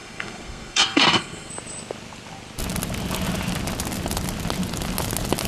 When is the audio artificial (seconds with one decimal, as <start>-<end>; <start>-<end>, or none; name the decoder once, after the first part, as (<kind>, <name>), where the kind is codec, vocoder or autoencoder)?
0.0-1.5 (codec, SNAC)